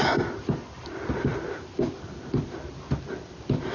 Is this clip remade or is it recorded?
recorded